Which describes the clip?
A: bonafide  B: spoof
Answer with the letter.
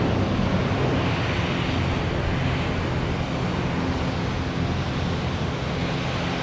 A